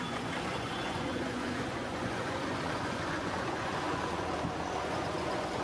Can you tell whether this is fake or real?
fake